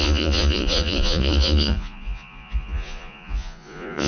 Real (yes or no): no